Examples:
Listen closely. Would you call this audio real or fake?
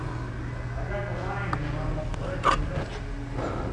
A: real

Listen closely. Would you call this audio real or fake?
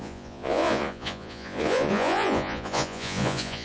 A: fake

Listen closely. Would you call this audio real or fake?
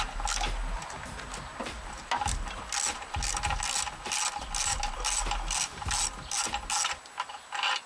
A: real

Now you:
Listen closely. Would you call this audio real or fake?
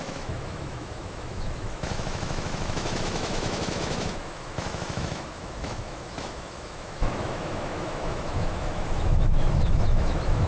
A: fake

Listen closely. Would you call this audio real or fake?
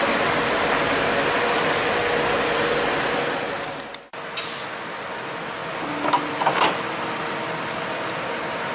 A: real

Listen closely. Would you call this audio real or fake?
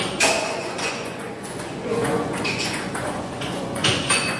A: fake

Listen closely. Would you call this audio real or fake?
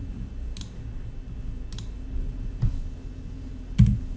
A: real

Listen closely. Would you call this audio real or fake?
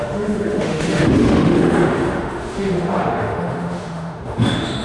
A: fake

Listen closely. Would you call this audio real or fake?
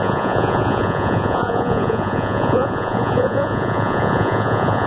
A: fake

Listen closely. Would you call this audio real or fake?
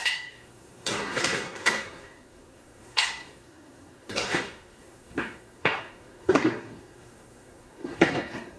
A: fake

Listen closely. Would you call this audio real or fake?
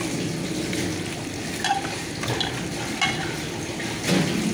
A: real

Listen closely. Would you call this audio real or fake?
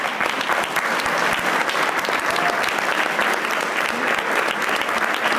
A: real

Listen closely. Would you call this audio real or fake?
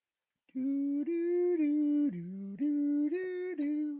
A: real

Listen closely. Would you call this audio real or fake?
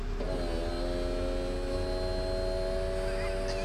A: real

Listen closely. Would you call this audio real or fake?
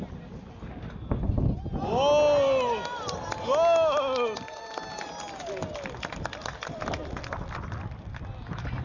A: real